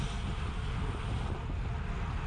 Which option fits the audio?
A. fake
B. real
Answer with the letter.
B